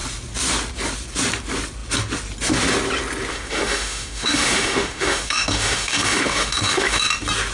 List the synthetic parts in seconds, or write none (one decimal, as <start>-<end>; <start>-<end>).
3.3-7.1